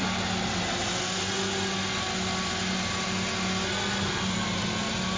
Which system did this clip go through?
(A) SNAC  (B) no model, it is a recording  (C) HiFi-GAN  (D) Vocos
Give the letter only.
B